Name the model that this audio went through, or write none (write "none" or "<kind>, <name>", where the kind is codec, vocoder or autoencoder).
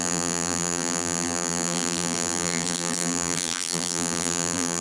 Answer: vocoder, BigVGAN v2